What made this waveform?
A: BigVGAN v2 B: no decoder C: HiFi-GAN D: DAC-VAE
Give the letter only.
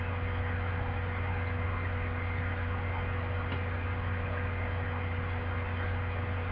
B